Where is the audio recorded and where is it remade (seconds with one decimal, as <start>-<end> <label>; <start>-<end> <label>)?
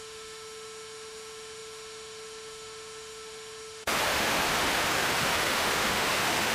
0.0-6.5 remade